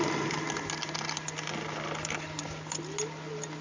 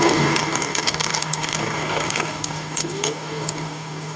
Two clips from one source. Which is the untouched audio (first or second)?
first